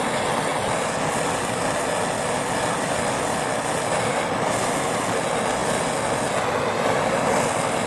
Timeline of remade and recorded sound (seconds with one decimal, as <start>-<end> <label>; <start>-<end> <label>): 0.0-7.9 recorded